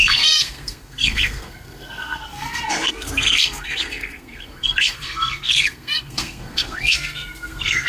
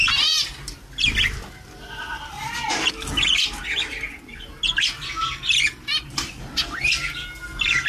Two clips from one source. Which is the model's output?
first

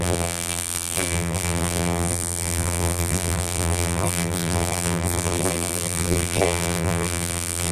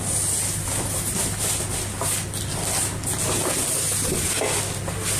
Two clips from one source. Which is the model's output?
first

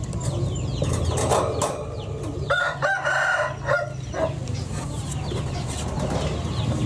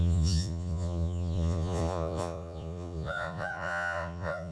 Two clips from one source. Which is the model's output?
second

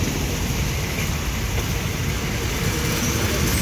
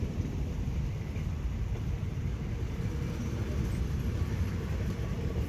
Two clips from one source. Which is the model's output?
second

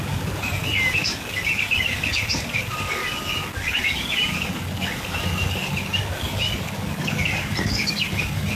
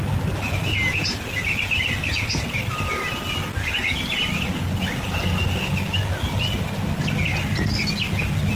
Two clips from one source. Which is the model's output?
first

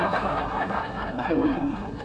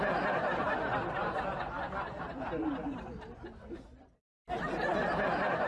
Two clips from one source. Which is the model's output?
first